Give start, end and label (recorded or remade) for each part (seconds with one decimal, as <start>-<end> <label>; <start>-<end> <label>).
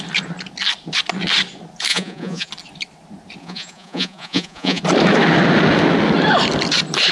0.0-1.9 recorded; 1.9-2.5 remade; 2.5-3.4 recorded; 3.4-4.8 remade; 4.8-7.1 recorded